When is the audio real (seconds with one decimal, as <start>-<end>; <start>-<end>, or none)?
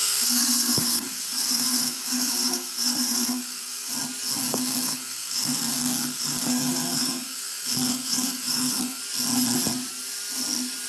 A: 3.9-4.5; 9.0-10.9